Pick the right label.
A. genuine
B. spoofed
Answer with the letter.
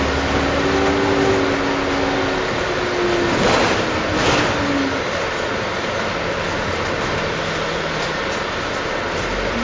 A